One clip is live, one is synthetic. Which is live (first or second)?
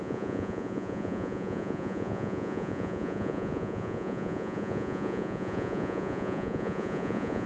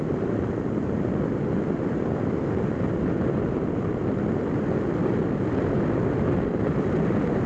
second